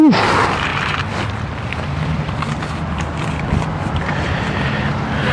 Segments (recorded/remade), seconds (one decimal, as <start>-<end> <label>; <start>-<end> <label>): 0.0-5.3 recorded